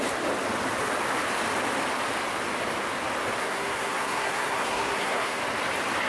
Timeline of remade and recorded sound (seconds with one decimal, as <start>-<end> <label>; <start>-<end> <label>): 0.0-3.4 recorded; 3.4-5.4 remade; 5.4-6.1 recorded